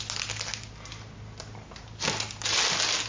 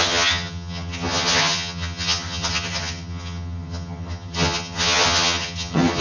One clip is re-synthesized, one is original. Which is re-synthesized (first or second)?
second